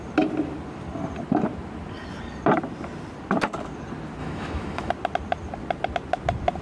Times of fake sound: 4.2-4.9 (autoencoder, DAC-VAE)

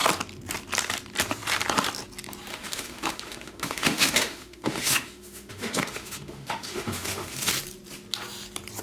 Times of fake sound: 2.5-7.5 (autoencoder, DAC-VAE)

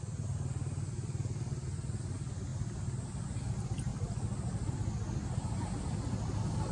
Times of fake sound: none

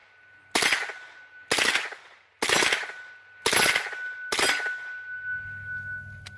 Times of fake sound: none

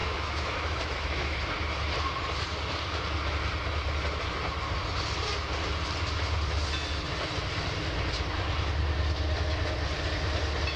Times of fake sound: 0.0-1.4 (autoencoder, DAC-VAE)

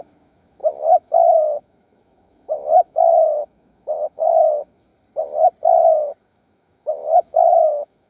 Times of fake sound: 0.0-4.9 (autoencoder, DAC-VAE); 6.2-8.1